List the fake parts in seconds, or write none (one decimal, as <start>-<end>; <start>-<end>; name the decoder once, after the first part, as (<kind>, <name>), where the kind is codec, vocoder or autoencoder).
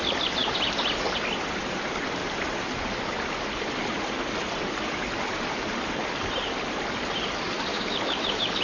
7.7-8.6 (autoencoder, DAC-VAE)